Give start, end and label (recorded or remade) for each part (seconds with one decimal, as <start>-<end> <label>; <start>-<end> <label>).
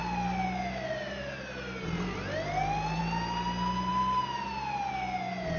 0.0-5.6 recorded